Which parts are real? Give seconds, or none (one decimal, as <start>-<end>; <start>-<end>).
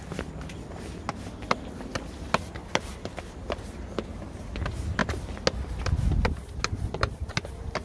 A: 0.0-7.8